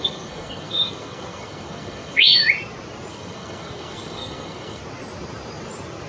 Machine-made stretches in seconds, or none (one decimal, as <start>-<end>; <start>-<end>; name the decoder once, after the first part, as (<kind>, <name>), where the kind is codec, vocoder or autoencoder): 0.0-2.4 (codec, SNAC); 3.1-4.8